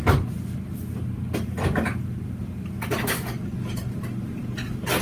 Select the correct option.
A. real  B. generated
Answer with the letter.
A